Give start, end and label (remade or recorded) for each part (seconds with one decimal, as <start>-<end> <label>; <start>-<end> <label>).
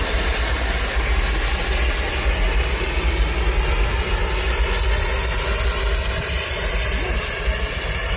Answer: 0.0-8.2 recorded